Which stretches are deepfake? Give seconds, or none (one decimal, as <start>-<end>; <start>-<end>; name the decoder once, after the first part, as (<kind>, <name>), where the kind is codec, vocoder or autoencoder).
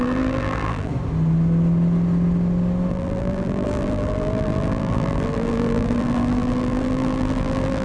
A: 0.0-0.9 (vocoder, BigVGAN v2); 2.9-7.8